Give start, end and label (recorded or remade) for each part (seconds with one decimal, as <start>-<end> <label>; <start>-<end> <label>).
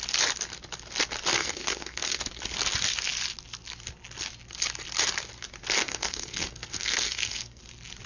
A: 0.0-1.4 recorded; 1.4-2.2 remade; 2.2-5.8 recorded; 5.8-7.6 remade; 7.6-8.1 recorded